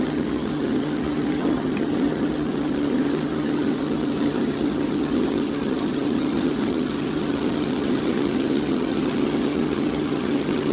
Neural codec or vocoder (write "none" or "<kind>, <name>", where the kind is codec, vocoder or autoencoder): vocoder, HiFi-GAN